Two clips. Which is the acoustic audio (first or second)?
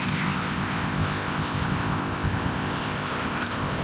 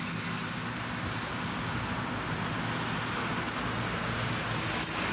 second